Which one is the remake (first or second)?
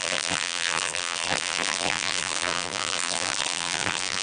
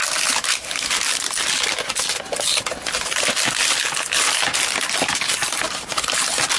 first